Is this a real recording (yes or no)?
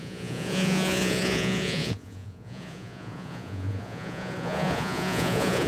no